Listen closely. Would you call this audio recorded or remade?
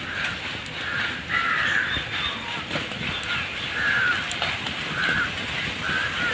recorded